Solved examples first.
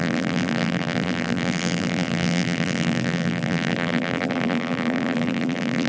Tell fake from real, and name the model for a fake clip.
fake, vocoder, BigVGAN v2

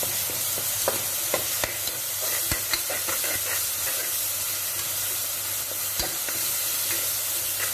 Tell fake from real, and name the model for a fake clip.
real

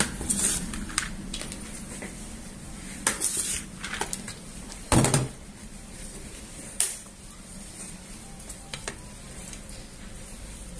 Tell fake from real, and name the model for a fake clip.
fake, vocoder, BigVGAN v2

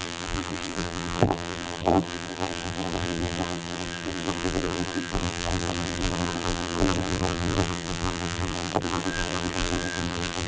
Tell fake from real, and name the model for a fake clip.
fake, vocoder, BigVGAN v2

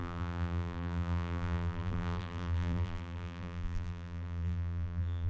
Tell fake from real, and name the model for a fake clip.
fake, vocoder, BigVGAN v2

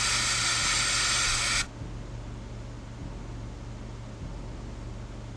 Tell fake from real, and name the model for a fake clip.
real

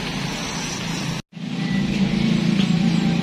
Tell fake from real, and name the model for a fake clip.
real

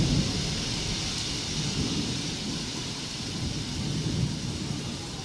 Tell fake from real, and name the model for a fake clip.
fake, vocoder, BigVGAN v2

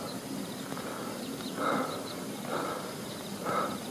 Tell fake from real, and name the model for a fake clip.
real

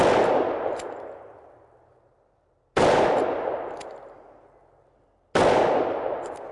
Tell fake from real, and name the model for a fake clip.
real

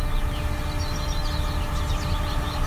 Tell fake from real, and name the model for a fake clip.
real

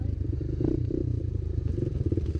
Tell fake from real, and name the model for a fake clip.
fake, vocoder, BigVGAN v2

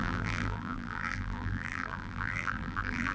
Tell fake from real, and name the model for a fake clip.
fake, vocoder, BigVGAN v2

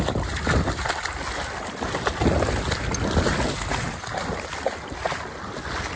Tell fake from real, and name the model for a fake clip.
real